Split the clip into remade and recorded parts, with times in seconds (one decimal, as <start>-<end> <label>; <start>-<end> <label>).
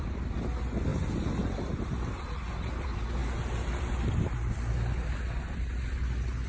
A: 0.0-6.5 recorded